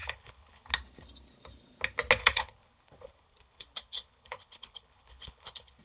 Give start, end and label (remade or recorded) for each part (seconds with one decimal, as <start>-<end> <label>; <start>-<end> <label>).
0.0-0.7 remade; 0.7-2.2 recorded; 2.2-5.8 remade